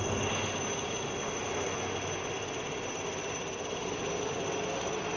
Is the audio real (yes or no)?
yes